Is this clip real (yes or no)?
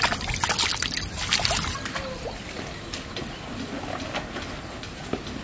yes